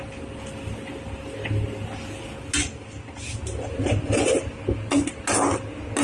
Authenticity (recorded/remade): recorded